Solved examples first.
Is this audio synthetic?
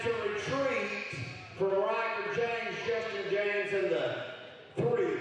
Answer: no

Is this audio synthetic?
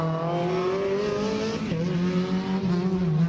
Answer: no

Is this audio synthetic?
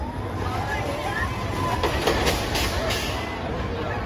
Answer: no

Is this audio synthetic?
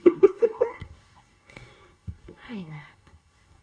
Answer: yes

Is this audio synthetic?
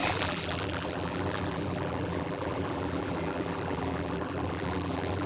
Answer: yes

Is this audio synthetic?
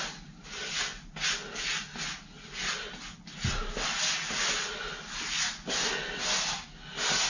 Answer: no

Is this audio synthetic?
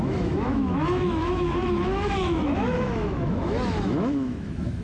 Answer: yes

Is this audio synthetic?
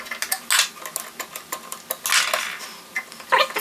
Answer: no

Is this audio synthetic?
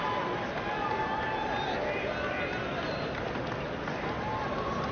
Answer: no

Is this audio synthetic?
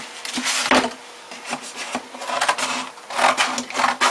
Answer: no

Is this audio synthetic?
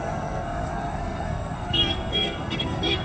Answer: yes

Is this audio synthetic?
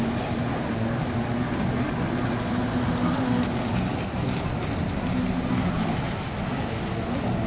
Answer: no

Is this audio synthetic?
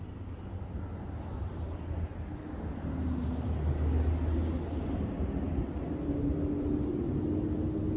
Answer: no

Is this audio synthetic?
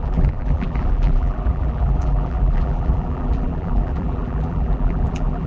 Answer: yes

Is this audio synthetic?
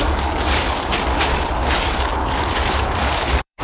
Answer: yes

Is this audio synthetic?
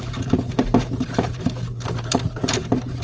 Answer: yes